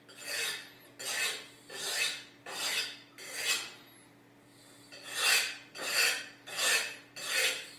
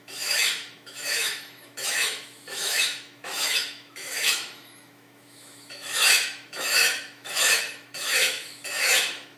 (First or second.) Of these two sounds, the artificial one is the second